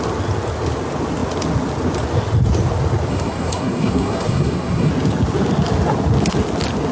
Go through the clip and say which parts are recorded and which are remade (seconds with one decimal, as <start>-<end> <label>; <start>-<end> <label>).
0.0-3.1 recorded; 3.1-4.9 remade; 4.9-6.9 recorded